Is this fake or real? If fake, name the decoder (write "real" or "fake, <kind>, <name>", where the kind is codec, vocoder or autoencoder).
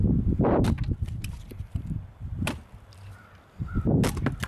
real